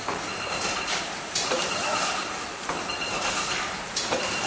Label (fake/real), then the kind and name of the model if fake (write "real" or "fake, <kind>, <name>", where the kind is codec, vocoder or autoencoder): fake, vocoder, BigVGAN v2